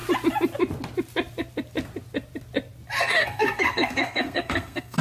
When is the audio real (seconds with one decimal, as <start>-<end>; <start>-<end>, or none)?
0.0-3.0